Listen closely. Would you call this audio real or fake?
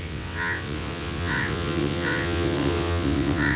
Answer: fake